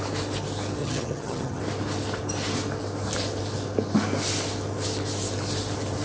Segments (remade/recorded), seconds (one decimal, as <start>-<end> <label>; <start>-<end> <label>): 0.0-0.8 recorded; 0.8-1.6 remade; 1.6-6.0 recorded

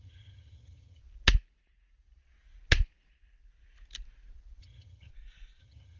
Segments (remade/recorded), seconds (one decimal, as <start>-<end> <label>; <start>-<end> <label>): 0.0-1.0 remade; 1.0-4.6 recorded; 4.6-5.1 remade; 5.1-5.6 recorded; 5.6-6.0 remade

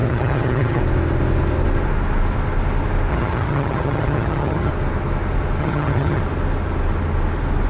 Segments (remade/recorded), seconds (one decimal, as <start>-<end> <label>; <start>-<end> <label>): 0.0-0.8 remade; 0.8-3.1 recorded; 3.1-4.7 remade; 4.7-5.6 recorded; 5.6-6.2 remade; 6.2-7.7 recorded